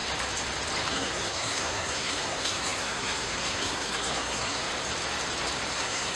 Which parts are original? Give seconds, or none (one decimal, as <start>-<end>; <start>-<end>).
0.0-0.9; 4.7-5.7

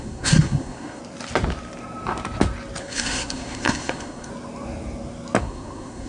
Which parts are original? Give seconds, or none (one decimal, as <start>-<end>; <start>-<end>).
1.0-2.8; 4.3-5.4

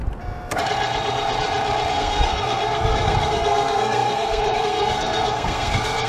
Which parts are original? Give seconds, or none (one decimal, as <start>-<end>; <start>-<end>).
0.0-1.9

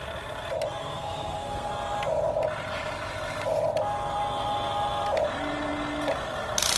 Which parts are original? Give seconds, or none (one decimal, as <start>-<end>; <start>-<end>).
0.0-0.8; 1.7-6.8

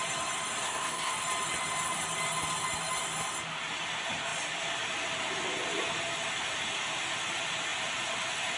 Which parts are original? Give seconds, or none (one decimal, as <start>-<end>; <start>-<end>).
0.0-0.6; 1.1-8.6

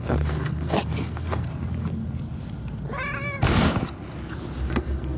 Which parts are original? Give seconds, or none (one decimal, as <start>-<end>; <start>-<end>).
1.5-4.6